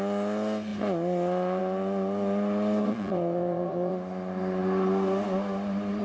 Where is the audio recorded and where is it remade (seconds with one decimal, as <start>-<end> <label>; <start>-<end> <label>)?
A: 0.0-2.8 recorded; 2.8-3.9 remade; 3.9-6.0 recorded